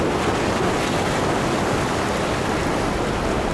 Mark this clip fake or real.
real